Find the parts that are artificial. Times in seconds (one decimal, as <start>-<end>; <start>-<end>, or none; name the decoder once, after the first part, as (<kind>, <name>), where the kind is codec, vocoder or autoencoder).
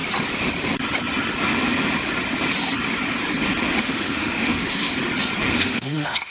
3.8-4.9 (autoencoder, DAC-VAE); 5.5-6.3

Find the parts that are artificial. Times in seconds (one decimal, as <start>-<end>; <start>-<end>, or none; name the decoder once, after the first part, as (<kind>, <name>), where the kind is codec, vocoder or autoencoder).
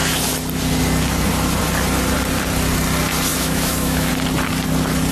3.3-4.1 (autoencoder, DAC-VAE)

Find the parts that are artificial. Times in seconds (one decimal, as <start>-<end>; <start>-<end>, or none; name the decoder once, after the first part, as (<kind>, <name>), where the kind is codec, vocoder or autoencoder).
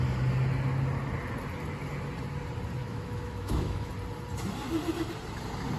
2.8-3.9 (autoencoder, DAC-VAE)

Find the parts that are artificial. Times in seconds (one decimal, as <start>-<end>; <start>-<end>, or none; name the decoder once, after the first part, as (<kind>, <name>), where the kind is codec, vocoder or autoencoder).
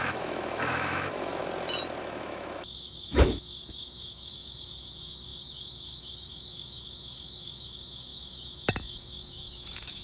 0.0-1.4 (autoencoder, DAC-VAE); 2.0-10.0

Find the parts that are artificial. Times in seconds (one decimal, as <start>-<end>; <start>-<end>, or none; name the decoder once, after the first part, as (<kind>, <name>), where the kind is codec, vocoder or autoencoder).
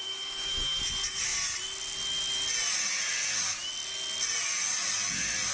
0.0-0.8 (autoencoder, DAC-VAE)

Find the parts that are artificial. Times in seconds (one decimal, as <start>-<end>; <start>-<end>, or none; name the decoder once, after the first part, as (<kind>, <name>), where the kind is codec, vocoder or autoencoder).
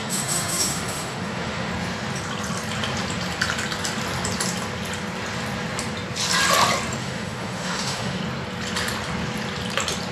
0.0-1.7 (autoencoder, DAC-VAE); 7.0-8.2